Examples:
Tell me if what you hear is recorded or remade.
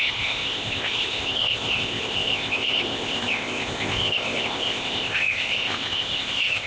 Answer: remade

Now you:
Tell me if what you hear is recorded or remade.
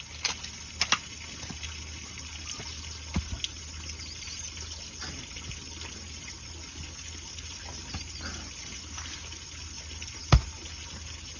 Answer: recorded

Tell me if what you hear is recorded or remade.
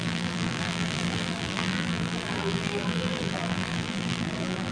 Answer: remade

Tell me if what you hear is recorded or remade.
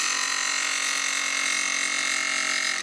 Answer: recorded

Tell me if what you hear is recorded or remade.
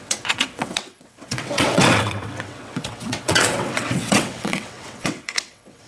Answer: remade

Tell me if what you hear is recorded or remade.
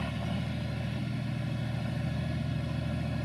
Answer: recorded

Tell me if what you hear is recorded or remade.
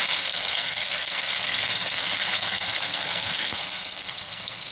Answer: remade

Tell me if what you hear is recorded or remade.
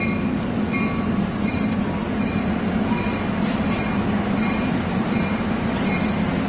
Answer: recorded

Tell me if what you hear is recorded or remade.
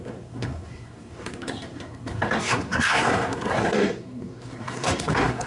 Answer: remade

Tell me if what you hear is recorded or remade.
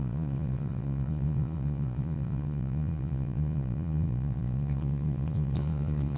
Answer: remade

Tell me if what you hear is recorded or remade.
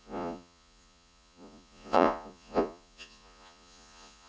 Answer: remade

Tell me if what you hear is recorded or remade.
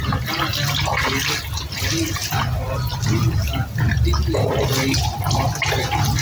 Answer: recorded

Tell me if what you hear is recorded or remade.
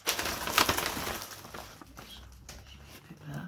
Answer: recorded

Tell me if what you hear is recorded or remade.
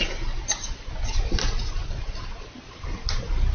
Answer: recorded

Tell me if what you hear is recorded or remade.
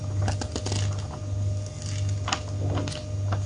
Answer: recorded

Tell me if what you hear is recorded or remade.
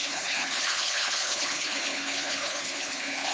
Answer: remade